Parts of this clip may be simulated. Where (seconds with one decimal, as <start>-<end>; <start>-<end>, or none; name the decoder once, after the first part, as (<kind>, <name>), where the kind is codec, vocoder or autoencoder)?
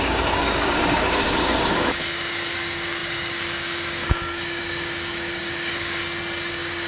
0.0-6.0 (codec, DAC); 6.5-6.9